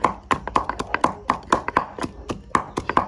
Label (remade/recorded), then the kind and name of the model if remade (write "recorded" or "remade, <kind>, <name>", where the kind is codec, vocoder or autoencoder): recorded